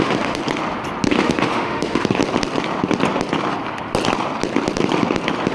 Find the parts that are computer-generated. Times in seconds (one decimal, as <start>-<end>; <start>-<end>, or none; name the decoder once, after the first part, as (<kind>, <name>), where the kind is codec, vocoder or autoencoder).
0.0-0.4 (autoencoder, DAC-VAE); 1.1-2.2